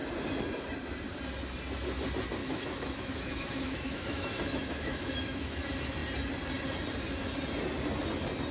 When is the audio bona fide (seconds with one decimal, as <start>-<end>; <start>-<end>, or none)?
0.0-2.4; 5.6-8.5